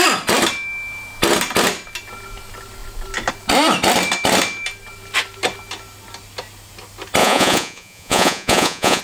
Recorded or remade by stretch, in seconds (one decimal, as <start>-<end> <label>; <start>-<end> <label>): 0.0-7.2 recorded; 7.2-9.0 remade